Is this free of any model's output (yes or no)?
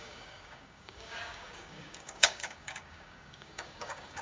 no